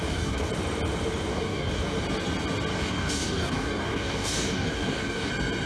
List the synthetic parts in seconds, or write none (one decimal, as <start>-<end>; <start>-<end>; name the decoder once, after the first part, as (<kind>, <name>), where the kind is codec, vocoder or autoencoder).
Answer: 0.0-0.5 (codec, DAC); 1.3-1.8; 2.7-5.3